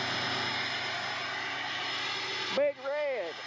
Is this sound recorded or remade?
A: recorded